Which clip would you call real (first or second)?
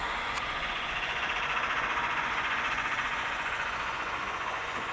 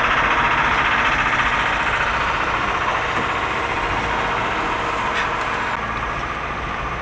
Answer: second